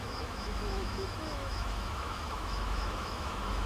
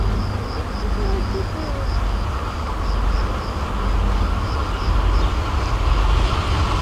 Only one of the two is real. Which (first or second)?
second